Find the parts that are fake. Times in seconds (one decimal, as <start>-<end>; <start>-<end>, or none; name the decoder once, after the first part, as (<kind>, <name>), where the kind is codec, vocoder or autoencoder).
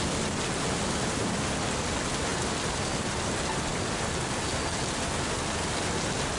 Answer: none